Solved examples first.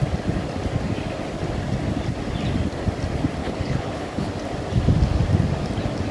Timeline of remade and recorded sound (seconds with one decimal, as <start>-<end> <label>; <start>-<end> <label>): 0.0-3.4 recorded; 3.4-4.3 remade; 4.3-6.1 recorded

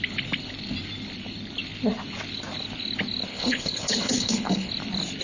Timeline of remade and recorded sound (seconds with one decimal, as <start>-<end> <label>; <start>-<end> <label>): 0.0-3.3 recorded; 3.3-4.7 remade; 4.7-5.2 recorded

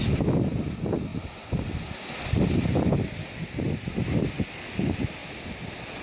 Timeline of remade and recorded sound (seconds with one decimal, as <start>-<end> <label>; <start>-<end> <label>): 0.0-6.0 recorded

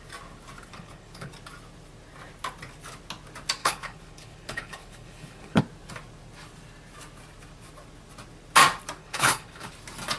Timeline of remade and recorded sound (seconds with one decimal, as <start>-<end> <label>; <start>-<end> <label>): 0.0-0.7 recorded; 0.7-1.3 remade; 1.3-3.6 recorded; 3.6-5.6 remade; 5.6-9.0 recorded; 9.0-9.7 remade; 9.7-10.2 recorded